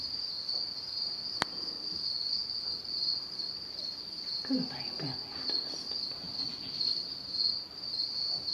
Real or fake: real